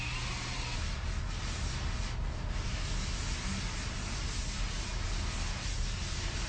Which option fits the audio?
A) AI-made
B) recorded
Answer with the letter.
B